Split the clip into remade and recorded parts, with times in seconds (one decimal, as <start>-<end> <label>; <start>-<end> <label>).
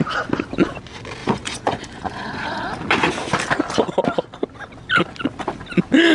0.0-1.2 recorded; 1.2-2.6 remade; 2.6-6.1 recorded